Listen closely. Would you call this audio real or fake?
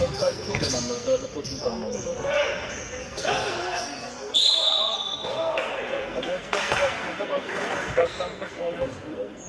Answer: fake